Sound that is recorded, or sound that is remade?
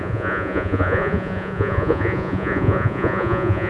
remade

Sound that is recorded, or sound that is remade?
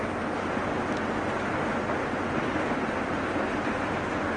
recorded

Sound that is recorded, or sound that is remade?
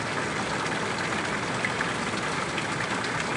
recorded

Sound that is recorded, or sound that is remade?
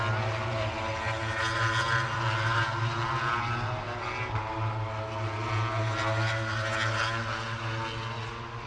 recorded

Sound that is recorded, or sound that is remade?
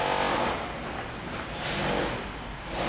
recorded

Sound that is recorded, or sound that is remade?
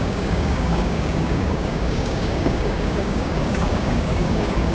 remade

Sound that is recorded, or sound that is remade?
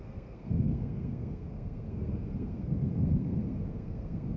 remade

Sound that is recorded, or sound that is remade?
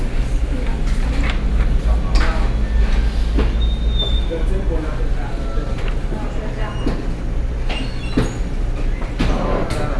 recorded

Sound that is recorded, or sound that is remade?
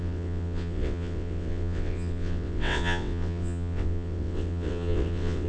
remade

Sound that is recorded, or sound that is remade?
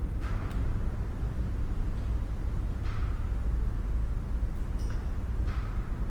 recorded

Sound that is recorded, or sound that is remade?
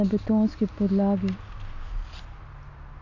recorded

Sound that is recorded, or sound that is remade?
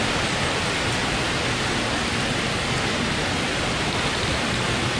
recorded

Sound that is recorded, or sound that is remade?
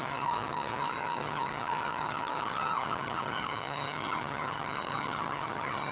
remade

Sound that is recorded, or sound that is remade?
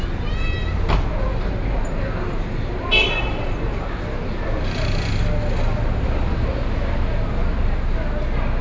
recorded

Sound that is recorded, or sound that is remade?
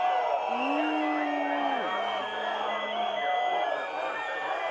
recorded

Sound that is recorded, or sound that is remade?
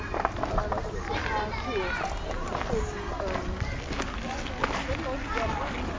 recorded